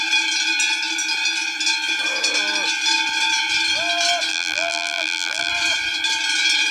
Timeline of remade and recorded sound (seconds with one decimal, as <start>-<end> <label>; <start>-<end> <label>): 0.0-4.3 recorded; 4.3-5.5 remade; 5.5-6.7 recorded

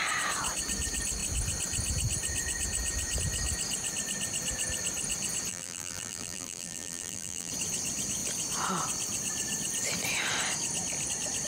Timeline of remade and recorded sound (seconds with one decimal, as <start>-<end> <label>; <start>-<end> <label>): 0.0-5.5 recorded; 5.5-7.5 remade; 7.5-11.5 recorded